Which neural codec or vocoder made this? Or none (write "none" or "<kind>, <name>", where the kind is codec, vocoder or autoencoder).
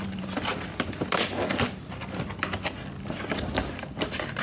vocoder, BigVGAN v2